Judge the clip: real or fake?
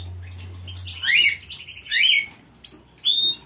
real